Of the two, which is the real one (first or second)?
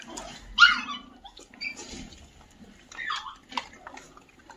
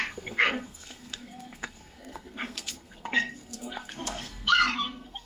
first